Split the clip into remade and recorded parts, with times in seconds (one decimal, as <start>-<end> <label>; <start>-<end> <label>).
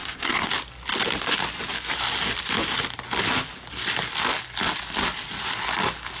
0.0-0.5 remade; 0.5-6.2 recorded